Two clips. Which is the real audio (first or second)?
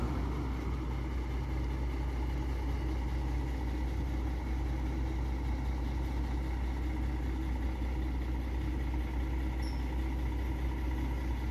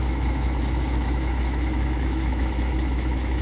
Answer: first